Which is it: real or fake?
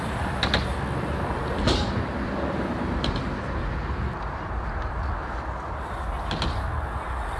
real